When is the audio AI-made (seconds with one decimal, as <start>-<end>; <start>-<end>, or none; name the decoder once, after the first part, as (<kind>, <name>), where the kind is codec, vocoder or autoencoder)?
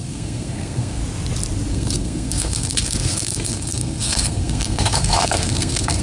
0.0-1.0 (codec, SNAC); 1.7-6.0